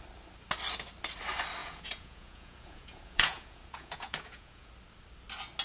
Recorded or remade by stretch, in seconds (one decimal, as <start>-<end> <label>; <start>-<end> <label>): 0.0-1.6 recorded; 1.6-4.7 remade; 4.7-5.6 recorded